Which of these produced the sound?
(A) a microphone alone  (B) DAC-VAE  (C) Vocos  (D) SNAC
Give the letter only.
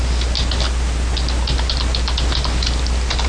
A